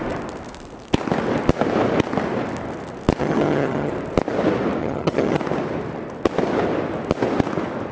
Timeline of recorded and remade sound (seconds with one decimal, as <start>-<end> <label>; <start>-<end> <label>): 0.0-3.2 recorded; 3.2-3.9 remade; 3.9-4.8 recorded; 4.8-5.4 remade; 5.4-7.9 recorded

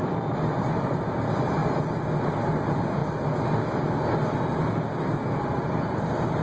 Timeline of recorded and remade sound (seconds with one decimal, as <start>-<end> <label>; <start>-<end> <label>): 0.0-1.6 remade; 1.6-2.2 recorded; 2.2-3.0 remade; 3.0-5.4 recorded; 5.4-6.4 remade

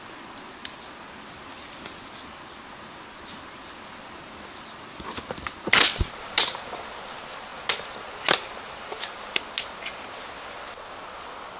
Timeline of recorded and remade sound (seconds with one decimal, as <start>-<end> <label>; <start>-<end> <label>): 0.0-11.6 recorded

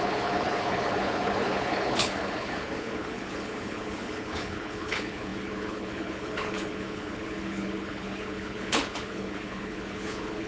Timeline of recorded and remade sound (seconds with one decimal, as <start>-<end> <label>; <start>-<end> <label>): 0.0-10.5 remade

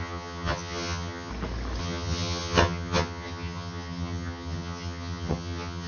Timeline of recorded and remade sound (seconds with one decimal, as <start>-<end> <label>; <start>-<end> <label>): 0.0-1.3 remade; 1.3-1.8 recorded; 1.8-5.9 remade

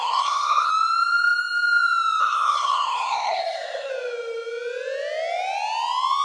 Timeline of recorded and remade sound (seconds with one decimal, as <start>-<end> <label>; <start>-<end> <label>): 0.0-0.7 remade; 0.7-2.2 recorded; 2.2-3.9 remade; 3.9-6.2 recorded

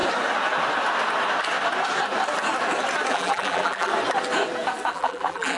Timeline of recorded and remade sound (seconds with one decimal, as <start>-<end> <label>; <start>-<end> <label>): 0.0-3.1 recorded; 3.1-3.9 remade; 3.9-4.9 recorded; 4.9-5.6 remade